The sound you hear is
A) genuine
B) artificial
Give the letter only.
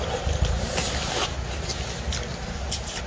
A